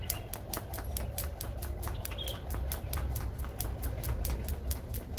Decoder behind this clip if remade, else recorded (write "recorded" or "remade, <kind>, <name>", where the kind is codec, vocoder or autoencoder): recorded